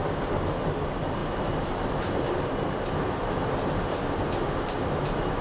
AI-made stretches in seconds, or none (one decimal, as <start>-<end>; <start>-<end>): none